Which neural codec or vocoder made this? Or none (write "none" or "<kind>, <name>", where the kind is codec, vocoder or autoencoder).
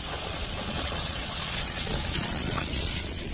vocoder, Vocos